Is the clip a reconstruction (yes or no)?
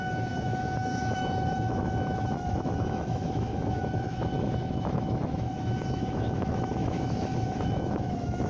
yes